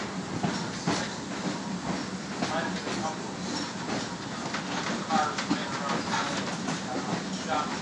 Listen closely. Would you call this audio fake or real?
real